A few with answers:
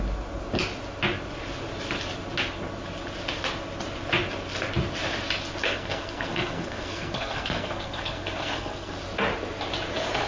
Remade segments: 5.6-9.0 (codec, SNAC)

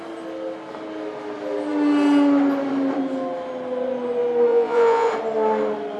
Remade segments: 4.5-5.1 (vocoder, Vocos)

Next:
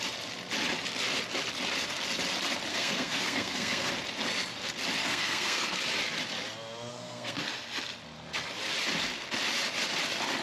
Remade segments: 2.7-3.9 (codec, SNAC); 5.0-5.8; 6.9-7.4